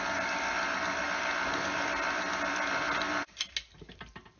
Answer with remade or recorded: recorded